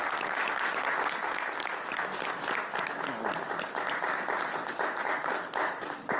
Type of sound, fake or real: real